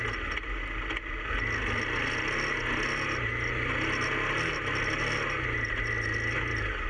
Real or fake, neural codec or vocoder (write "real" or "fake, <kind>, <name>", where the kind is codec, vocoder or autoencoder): real